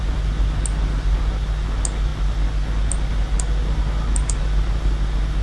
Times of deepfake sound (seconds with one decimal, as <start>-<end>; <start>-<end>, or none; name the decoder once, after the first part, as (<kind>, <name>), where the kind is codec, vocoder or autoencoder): none